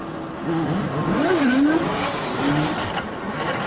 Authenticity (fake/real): real